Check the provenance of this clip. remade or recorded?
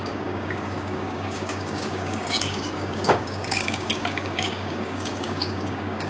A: remade